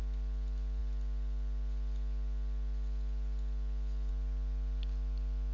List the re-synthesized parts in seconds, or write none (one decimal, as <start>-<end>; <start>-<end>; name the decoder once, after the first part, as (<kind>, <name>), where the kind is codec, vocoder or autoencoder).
none

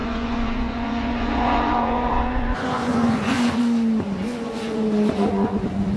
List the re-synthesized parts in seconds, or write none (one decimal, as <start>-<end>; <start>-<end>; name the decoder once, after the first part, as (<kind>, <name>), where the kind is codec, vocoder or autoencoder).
0.0-3.6 (vocoder, Vocos); 4.3-6.0

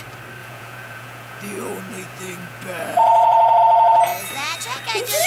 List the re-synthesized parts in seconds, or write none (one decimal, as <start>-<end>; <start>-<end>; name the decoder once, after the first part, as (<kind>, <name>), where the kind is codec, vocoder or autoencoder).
0.4-3.6 (vocoder, Vocos); 4.1-4.6

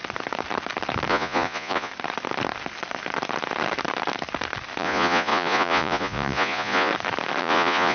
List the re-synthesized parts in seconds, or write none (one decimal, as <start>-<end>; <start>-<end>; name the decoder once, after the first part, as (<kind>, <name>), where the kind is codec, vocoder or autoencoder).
1.1-1.9 (vocoder, Vocos); 4.8-6.9; 7.4-7.9

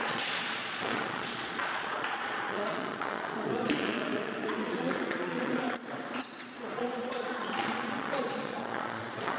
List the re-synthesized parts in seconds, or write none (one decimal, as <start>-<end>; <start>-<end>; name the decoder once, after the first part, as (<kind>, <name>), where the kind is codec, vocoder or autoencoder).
0.0-9.4 (vocoder, Vocos)